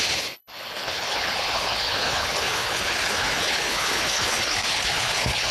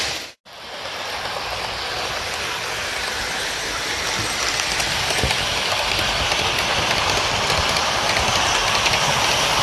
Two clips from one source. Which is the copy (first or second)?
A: first